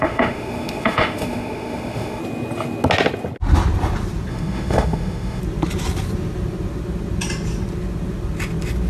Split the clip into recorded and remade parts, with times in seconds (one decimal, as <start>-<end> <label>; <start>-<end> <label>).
0.0-2.2 remade; 2.2-4.3 recorded; 4.3-5.4 remade; 5.4-8.9 recorded